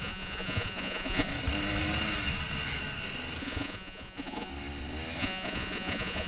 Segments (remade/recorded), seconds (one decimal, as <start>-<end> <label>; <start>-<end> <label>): 0.0-1.3 remade; 1.3-3.4 recorded; 3.4-4.5 remade; 4.5-5.2 recorded; 5.2-6.3 remade